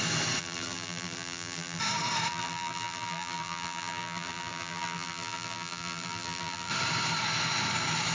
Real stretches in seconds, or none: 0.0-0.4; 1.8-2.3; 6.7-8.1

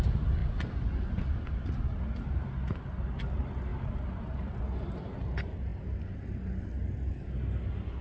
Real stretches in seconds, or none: 0.0-8.0

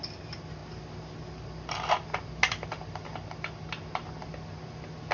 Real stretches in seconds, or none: 0.0-5.1